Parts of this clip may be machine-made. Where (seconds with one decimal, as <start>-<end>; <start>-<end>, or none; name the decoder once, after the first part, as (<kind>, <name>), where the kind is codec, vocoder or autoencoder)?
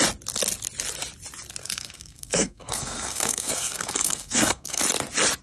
1.6-4.8 (codec, SNAC)